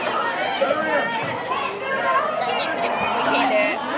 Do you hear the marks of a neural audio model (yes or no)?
no